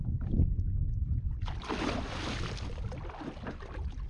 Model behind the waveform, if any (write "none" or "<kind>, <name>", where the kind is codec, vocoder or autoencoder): none